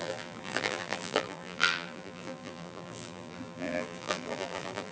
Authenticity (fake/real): fake